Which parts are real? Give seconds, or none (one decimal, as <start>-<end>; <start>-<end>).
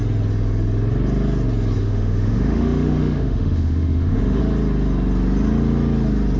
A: 0.0-1.8; 4.4-6.4